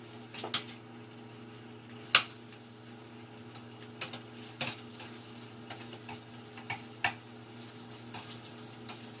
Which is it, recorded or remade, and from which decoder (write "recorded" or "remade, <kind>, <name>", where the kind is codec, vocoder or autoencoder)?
recorded